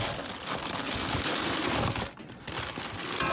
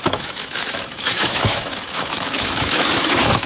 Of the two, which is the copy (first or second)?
second